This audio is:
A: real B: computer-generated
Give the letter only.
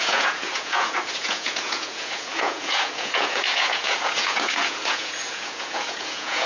B